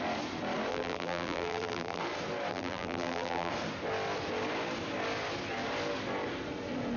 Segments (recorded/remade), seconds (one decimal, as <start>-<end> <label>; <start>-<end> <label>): 0.0-0.7 recorded; 0.7-2.0 remade; 2.0-2.5 recorded; 2.5-3.5 remade; 3.5-7.0 recorded